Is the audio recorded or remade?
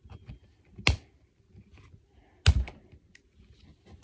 recorded